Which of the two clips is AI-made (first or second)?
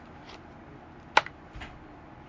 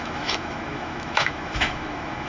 second